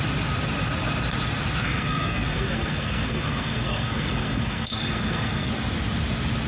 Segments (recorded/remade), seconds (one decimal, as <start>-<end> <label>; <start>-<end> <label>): 0.0-1.6 recorded; 1.6-5.5 remade; 5.5-6.5 recorded